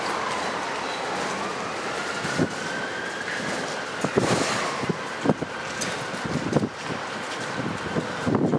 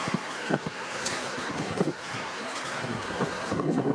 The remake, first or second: second